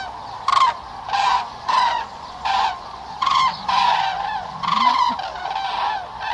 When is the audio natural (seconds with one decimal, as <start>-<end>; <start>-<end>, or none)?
0.0-1.3; 5.1-6.3